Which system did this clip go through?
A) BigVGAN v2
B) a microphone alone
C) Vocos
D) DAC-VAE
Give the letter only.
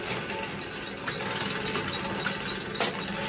B